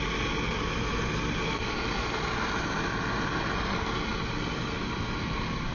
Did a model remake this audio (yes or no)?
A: no